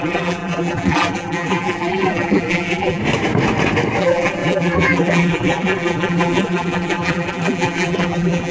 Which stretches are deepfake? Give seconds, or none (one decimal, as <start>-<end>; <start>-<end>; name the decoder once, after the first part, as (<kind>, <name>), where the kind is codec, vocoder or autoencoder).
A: 0.0-3.0 (vocoder, BigVGAN v2); 4.0-8.5